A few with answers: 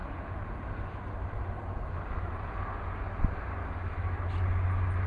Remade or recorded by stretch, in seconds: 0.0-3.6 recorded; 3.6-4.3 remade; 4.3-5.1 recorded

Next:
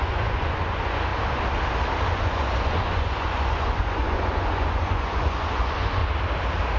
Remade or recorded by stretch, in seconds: 0.0-1.1 remade; 1.1-2.1 recorded; 2.1-6.0 remade; 6.0-6.8 recorded

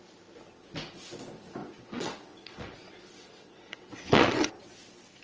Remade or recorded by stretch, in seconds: 0.0-1.6 recorded; 1.6-4.5 remade; 4.5-5.2 recorded

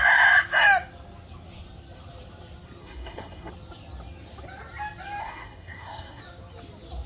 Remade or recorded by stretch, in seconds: 0.0-2.8 recorded; 2.8-3.5 remade; 3.5-5.2 recorded; 5.2-6.2 remade; 6.2-7.1 recorded

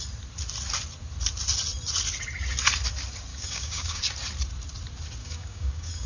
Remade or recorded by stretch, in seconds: 0.0-3.3 recorded; 3.3-4.0 remade; 4.0-5.2 recorded; 5.2-6.1 remade

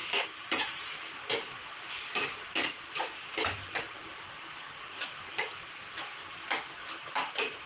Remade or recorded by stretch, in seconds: 0.0-4.1 remade; 4.1-7.7 recorded

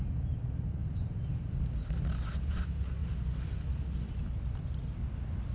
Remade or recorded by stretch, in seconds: 0.0-5.5 recorded

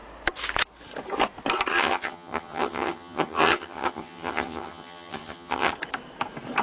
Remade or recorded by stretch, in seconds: 0.0-1.7 recorded; 1.7-5.7 remade; 5.7-6.6 recorded